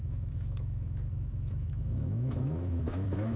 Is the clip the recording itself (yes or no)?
no